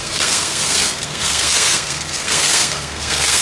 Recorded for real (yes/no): no